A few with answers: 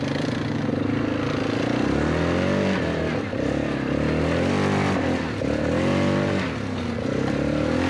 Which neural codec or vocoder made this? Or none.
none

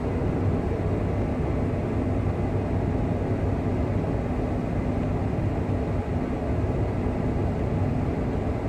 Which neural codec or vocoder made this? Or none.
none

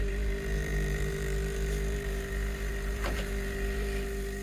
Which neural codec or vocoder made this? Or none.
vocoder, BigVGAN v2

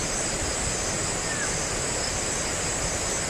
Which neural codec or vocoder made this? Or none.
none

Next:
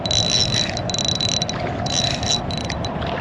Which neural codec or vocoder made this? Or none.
none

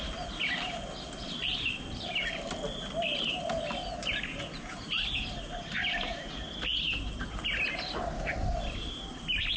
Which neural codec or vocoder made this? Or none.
none